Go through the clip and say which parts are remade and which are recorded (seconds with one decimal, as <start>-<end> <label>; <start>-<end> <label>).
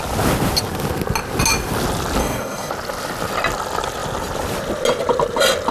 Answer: 0.0-2.2 recorded; 2.2-2.7 remade; 2.7-5.7 recorded